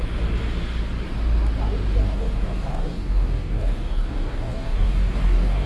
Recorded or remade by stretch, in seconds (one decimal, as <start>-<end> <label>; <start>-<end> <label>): 0.0-2.0 recorded; 2.0-5.7 remade